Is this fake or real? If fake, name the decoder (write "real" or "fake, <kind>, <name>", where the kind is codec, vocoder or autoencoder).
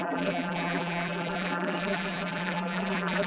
fake, vocoder, BigVGAN v2